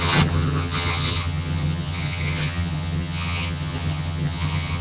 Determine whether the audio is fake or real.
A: fake